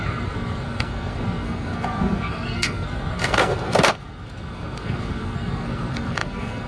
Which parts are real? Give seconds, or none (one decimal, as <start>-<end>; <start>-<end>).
none